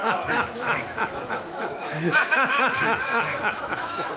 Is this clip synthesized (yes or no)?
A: yes